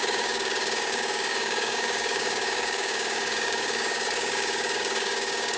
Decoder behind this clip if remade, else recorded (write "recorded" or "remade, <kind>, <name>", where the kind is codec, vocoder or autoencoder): remade, codec, DAC